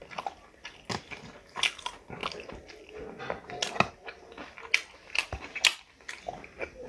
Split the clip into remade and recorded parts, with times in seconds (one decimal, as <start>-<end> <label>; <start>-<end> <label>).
0.0-5.2 recorded; 5.2-5.8 remade; 5.8-6.9 recorded